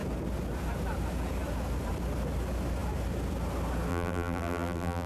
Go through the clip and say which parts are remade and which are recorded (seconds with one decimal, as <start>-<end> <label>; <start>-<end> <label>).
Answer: 0.0-3.9 recorded; 3.9-5.1 remade